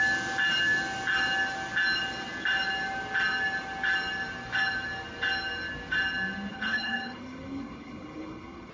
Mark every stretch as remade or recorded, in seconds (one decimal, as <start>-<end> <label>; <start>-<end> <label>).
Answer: 0.0-6.5 recorded; 6.5-8.7 remade